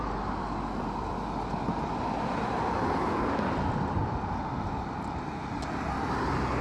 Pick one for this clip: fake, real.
real